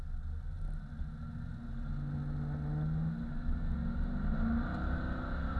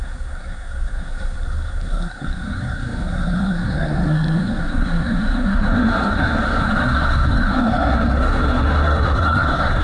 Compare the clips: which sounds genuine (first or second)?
first